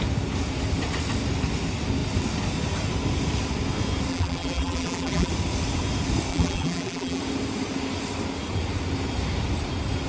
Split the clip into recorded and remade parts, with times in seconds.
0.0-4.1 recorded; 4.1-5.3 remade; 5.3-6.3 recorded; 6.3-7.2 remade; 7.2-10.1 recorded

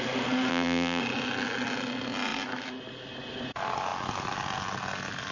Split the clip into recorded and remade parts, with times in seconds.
0.0-0.5 recorded; 0.5-1.0 remade; 1.0-5.3 recorded